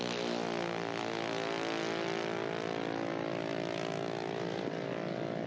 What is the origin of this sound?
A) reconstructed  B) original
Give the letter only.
B